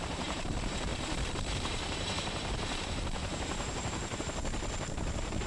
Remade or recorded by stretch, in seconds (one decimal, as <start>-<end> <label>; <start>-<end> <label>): 0.0-5.5 remade